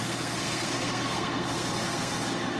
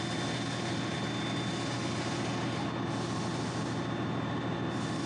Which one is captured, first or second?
second